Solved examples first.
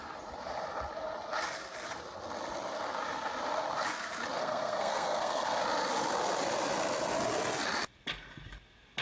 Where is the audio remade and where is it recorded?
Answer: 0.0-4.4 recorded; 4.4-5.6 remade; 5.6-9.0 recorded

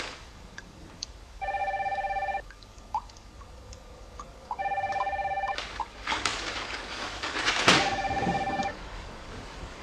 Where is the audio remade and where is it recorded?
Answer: 0.0-9.8 remade

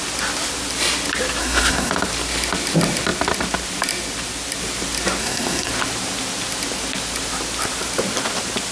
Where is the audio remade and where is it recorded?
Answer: 0.0-1.4 recorded; 1.4-1.9 remade; 1.9-5.2 recorded; 5.2-5.7 remade; 5.7-8.7 recorded